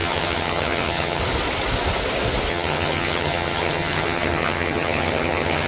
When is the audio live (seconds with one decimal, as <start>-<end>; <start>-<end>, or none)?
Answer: 1.2-2.5